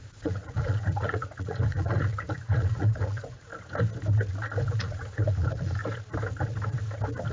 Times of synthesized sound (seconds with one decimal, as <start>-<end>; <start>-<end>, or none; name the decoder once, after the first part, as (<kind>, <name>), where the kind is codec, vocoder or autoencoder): 0.0-3.5 (vocoder, Vocos); 4.8-5.8